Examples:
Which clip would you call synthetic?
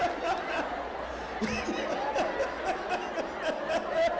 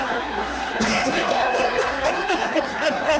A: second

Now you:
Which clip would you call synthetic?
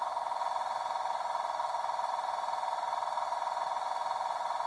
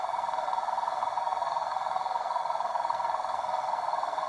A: second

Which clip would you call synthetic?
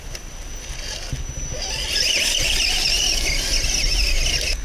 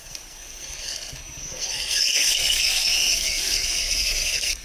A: second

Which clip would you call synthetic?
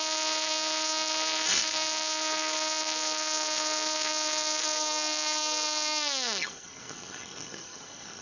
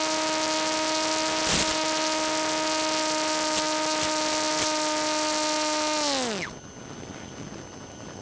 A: first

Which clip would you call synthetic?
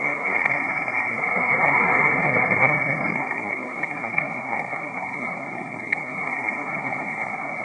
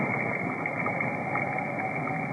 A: first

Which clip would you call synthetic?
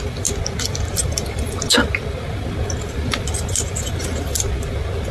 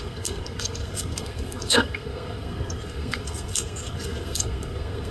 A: second